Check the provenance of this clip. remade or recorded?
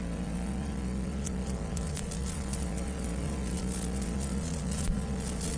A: remade